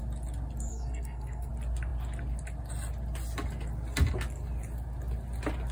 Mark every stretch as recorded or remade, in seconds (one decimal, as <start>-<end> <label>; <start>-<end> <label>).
0.0-0.7 recorded; 0.7-1.5 remade; 1.5-5.7 recorded